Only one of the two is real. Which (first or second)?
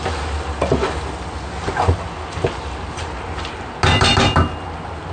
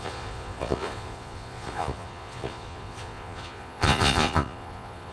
first